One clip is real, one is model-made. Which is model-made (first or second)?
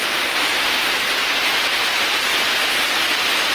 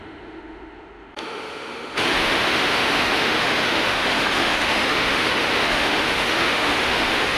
second